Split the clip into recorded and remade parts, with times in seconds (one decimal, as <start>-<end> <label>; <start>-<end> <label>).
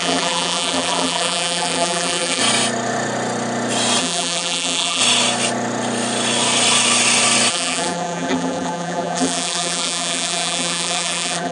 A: 0.0-2.4 remade; 2.4-4.0 recorded; 4.0-5.0 remade; 5.0-7.5 recorded; 7.5-11.5 remade